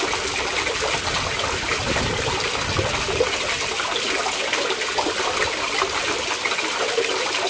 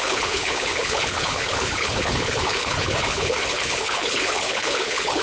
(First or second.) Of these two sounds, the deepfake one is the second